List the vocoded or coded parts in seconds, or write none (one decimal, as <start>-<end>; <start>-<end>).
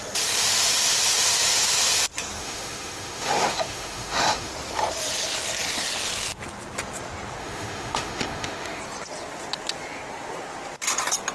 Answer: 2.4-4.5; 7.4-8.8